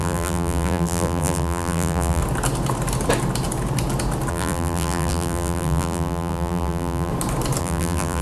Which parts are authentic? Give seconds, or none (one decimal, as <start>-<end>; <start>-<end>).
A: 2.2-4.3; 7.1-7.6